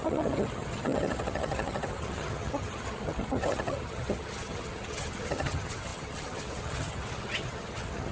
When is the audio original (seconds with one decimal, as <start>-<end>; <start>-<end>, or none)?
none

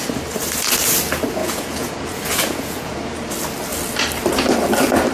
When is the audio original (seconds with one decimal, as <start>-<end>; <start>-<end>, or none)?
0.0-1.4; 3.0-5.1